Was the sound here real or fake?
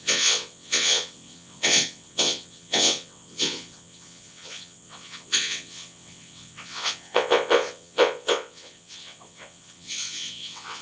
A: fake